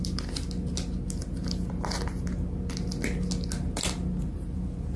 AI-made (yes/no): no